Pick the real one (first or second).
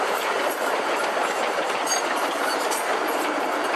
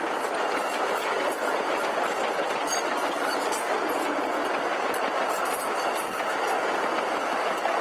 second